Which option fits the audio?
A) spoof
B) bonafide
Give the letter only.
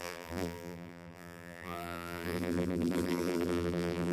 A